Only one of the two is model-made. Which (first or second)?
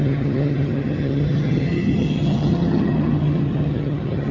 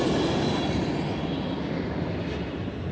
first